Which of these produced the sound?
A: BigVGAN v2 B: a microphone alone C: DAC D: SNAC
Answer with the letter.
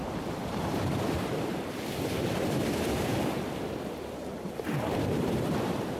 A